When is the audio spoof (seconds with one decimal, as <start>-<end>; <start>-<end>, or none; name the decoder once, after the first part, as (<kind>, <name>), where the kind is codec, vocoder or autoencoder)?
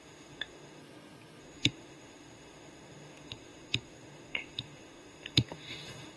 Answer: 0.0-0.8 (autoencoder, DAC-VAE); 1.4-6.2